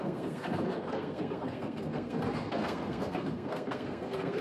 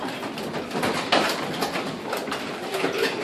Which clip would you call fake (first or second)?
first